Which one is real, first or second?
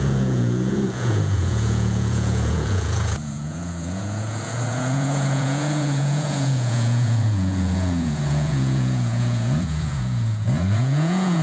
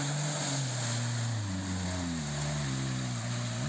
second